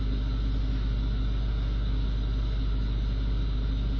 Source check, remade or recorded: recorded